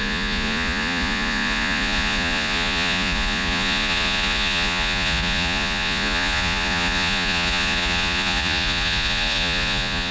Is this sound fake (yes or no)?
yes